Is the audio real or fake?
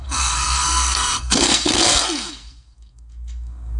fake